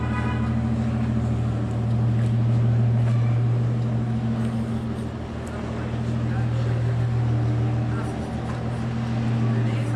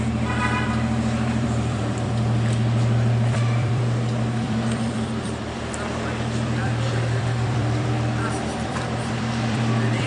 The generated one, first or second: second